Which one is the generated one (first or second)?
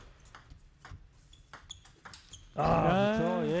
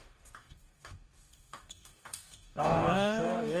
second